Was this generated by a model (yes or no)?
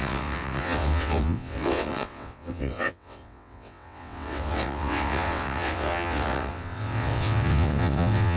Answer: yes